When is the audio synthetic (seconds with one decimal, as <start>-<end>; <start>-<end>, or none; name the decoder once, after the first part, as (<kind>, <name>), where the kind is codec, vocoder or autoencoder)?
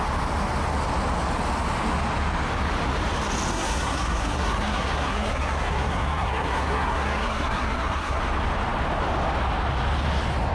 3.5-8.2 (codec, SNAC)